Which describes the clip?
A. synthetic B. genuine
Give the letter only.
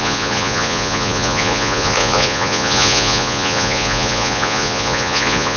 A